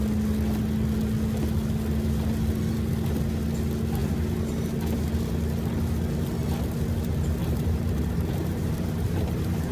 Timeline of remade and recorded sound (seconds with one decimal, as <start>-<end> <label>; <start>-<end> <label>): 0.0-4.0 recorded; 4.0-5.1 remade; 5.1-7.4 recorded; 7.4-9.7 remade